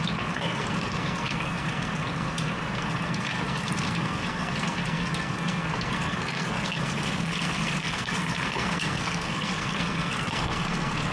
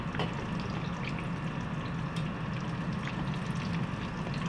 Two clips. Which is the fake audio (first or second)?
first